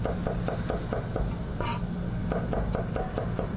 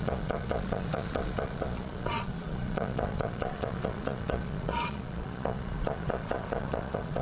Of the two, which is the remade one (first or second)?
second